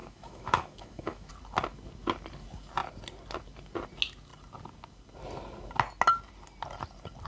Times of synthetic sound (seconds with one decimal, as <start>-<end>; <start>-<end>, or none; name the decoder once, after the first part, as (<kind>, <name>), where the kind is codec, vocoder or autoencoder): 0.0-1.3 (autoencoder, DAC-VAE)